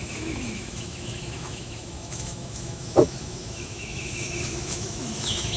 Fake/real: fake